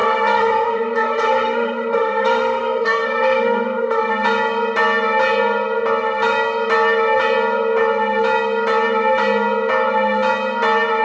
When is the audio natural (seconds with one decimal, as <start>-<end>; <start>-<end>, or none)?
4.1-11.0